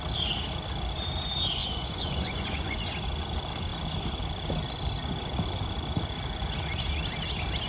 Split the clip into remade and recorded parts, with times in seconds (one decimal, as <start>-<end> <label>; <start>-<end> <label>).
0.0-1.6 recorded; 1.6-2.9 remade; 2.9-7.7 recorded